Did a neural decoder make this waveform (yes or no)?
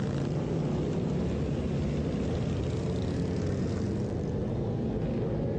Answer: no